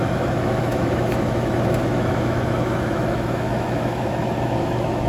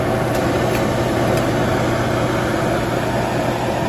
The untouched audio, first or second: second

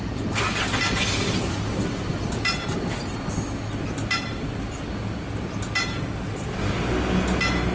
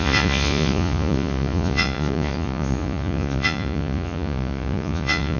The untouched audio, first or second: first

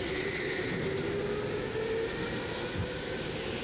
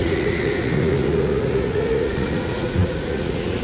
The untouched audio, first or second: first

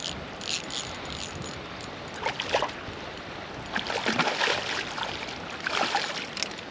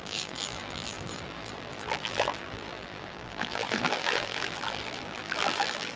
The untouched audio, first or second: first